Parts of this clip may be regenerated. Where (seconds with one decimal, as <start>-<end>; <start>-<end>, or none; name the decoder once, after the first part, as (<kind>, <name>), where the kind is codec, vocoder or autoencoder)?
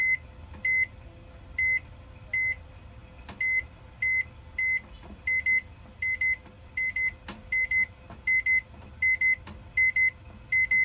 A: none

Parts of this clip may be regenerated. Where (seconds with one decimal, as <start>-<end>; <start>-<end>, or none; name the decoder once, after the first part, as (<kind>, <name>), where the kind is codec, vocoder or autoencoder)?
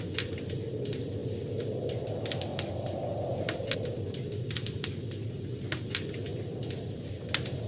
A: none